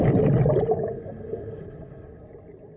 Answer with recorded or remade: recorded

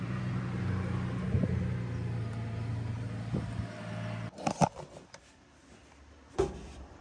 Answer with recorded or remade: recorded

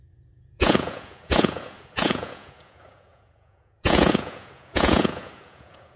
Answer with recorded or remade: remade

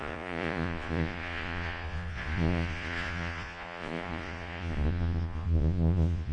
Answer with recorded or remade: remade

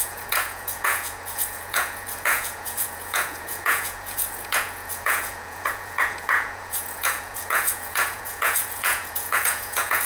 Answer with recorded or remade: remade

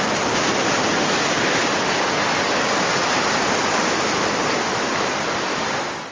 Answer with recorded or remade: recorded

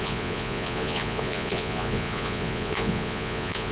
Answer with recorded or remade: remade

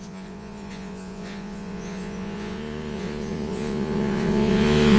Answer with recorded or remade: remade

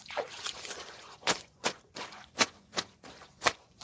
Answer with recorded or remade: remade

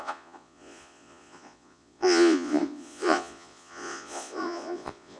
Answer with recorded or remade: remade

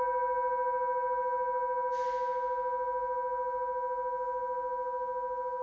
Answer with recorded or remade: recorded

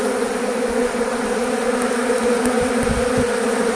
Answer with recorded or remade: recorded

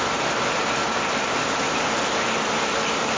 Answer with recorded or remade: recorded